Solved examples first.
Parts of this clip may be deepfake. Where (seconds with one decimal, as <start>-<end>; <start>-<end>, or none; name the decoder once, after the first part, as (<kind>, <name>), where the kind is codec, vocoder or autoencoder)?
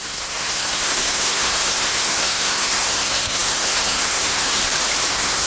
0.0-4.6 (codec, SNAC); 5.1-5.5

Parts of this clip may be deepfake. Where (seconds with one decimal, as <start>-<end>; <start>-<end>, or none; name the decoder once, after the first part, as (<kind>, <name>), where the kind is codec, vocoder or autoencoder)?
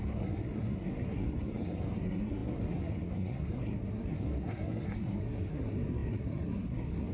0.0-7.1 (codec, SNAC)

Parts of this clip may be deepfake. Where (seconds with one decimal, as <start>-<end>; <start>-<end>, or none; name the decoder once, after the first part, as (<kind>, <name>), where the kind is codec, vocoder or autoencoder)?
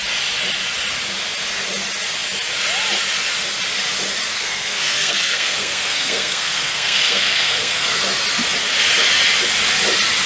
4.3-8.0 (codec, SNAC)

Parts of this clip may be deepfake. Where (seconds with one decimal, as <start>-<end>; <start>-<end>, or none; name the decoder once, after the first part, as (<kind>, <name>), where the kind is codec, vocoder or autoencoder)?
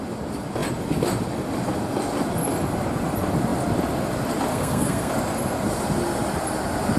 4.5-5.1 (codec, SNAC)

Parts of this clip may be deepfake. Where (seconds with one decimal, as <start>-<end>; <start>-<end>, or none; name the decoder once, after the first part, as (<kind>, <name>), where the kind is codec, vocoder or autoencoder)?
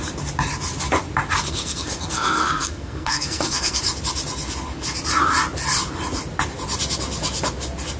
1.4-3.8 (codec, SNAC)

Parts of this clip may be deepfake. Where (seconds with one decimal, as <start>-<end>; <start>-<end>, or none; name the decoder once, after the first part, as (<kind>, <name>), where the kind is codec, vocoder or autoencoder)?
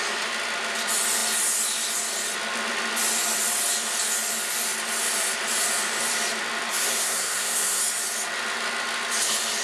6.7-7.8 (codec, SNAC)